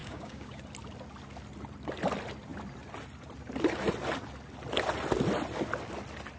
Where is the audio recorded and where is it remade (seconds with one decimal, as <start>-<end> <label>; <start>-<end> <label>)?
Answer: 0.0-0.6 remade; 0.6-6.4 recorded